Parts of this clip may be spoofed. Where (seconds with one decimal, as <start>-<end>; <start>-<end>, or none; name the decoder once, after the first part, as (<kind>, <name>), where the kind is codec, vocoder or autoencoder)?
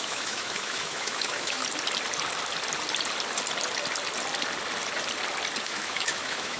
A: 0.0-1.6 (autoencoder, DAC-VAE); 5.6-6.6